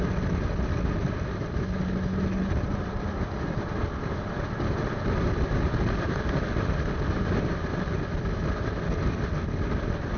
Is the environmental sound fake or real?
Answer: real